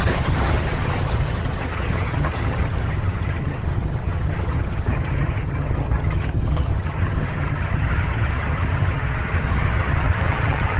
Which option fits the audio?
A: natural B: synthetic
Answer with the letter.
B